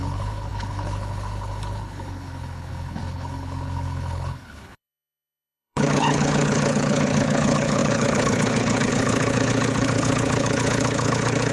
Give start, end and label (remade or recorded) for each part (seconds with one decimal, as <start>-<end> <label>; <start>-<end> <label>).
0.0-11.5 remade